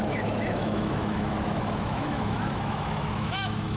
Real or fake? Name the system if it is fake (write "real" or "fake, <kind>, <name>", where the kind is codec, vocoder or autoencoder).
fake, autoencoder, DAC-VAE